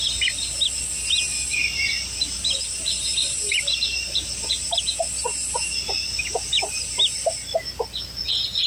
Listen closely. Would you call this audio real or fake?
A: real